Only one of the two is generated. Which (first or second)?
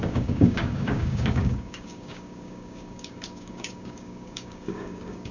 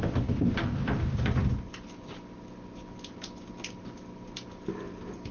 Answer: first